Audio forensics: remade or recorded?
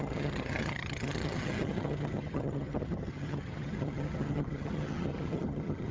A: remade